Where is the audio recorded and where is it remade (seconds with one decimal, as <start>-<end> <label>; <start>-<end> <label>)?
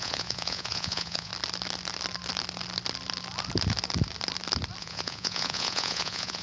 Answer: 0.0-1.3 remade; 1.3-4.8 recorded; 4.8-6.4 remade